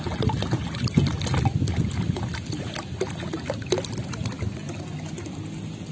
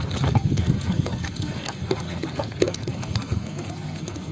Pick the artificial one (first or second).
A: second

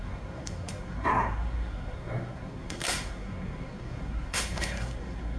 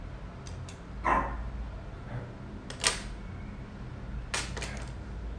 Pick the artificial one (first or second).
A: first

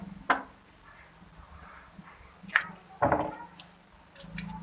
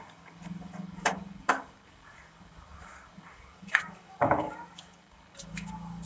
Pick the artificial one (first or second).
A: second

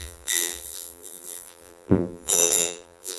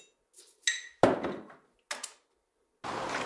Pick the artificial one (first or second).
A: first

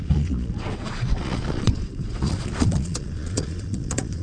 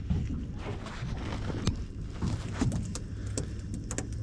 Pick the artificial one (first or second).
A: first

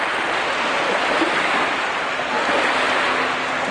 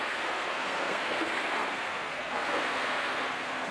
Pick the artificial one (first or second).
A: second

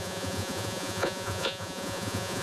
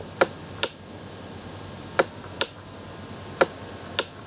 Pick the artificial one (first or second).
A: first